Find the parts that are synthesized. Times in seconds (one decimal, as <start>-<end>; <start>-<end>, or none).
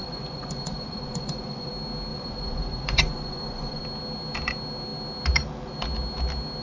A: 0.0-1.7; 2.1-3.8